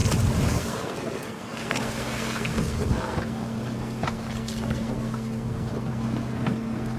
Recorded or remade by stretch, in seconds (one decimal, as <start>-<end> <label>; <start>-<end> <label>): 0.0-0.5 recorded; 0.5-7.0 remade